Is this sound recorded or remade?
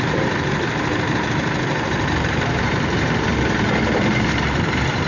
remade